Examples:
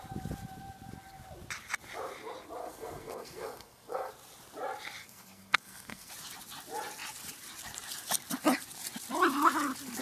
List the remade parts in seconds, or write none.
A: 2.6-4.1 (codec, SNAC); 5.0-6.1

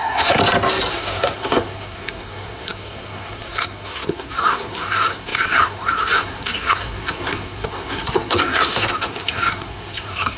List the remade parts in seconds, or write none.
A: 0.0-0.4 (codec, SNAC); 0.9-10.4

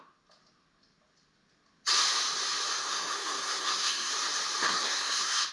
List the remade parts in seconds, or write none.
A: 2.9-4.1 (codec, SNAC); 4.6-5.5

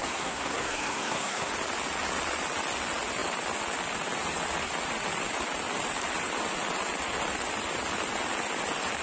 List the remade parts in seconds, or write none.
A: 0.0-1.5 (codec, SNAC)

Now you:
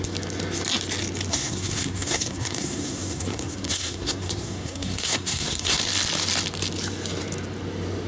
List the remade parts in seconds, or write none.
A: 1.3-5.8 (codec, SNAC)

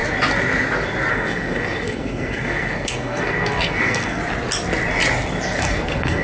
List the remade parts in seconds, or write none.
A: 1.1-4.2 (codec, SNAC); 5.6-6.2

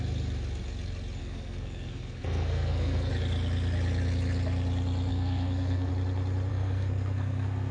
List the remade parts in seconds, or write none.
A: 1.2-3.1 (codec, SNAC); 5.1-5.9; 6.5-7.7